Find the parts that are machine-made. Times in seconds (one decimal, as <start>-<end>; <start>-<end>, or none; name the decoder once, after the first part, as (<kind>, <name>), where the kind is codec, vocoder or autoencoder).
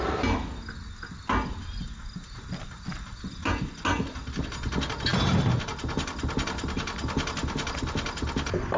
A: none